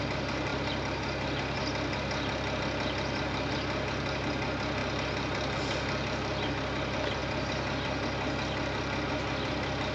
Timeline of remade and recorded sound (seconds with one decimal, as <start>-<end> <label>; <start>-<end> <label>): 0.0-9.9 remade